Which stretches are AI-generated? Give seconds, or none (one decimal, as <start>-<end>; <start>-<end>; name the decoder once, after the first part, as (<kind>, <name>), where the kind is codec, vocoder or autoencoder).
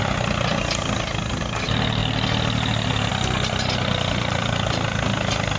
none